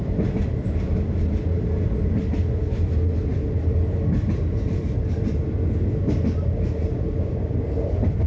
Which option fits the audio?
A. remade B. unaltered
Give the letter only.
B